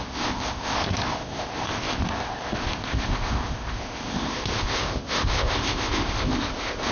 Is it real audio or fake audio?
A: fake